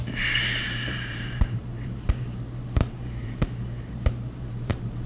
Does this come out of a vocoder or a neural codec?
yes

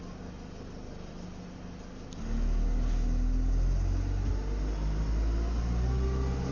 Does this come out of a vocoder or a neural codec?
no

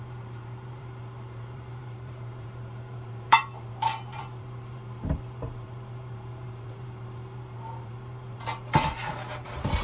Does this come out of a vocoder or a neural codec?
yes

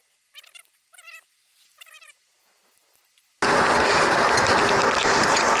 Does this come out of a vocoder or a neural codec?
no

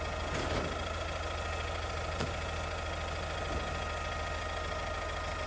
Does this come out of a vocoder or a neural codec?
no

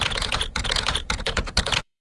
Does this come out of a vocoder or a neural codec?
yes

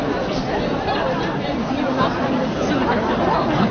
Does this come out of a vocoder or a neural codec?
no